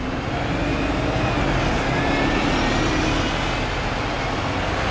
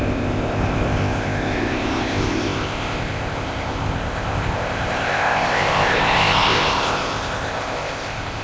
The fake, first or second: second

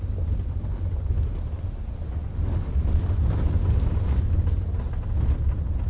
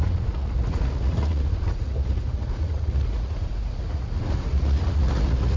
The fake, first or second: second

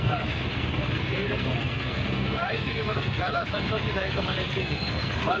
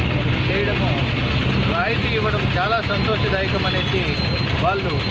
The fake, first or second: first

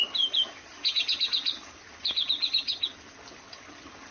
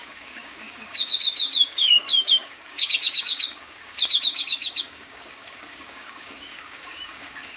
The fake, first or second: second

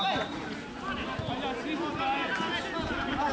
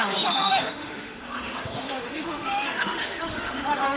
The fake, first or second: second